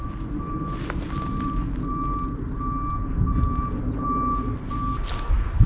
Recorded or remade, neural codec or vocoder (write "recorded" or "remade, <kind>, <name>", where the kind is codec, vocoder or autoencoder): recorded